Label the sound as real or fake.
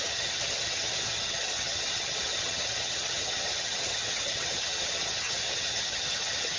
fake